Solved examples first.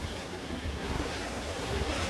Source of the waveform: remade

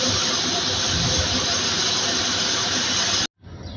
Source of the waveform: recorded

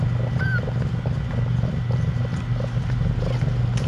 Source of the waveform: recorded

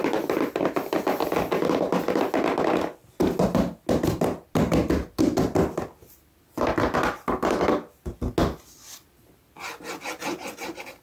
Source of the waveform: recorded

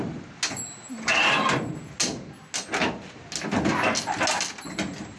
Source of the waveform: recorded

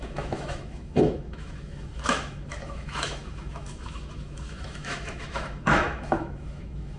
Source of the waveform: remade